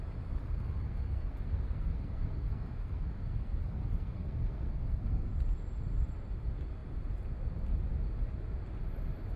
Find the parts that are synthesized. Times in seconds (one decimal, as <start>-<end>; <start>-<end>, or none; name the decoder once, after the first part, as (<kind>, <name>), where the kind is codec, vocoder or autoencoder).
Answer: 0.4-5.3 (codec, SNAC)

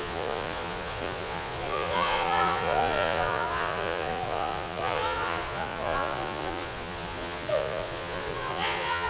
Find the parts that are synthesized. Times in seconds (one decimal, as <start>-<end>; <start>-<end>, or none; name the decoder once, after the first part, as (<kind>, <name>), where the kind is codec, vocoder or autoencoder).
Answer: 0.0-9.1 (vocoder, Vocos)

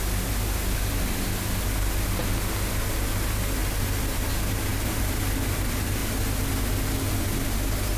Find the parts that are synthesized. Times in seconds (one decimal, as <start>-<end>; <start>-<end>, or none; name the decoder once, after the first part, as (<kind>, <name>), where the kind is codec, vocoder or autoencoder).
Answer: 3.6-4.3 (vocoder, BigVGAN v2); 4.7-5.4

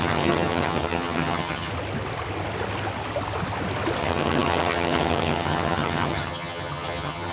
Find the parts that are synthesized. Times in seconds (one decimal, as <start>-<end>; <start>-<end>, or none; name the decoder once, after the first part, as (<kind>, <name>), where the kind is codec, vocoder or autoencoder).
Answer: 0.0-1.7 (vocoder, HiFi-GAN); 4.0-7.3